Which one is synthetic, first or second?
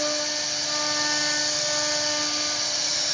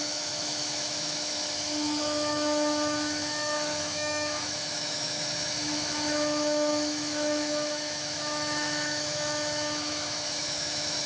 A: second